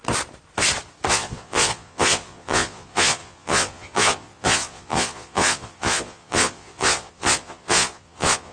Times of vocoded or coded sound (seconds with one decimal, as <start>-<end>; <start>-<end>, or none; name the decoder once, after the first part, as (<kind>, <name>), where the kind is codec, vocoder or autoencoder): 1.1-8.5 (vocoder, Vocos)